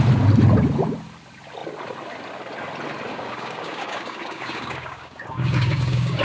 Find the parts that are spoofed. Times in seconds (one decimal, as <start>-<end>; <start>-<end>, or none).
3.1-6.2